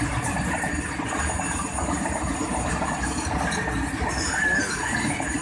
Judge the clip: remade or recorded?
recorded